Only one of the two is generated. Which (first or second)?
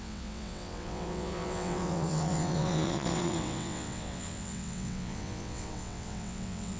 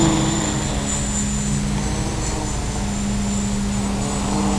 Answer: first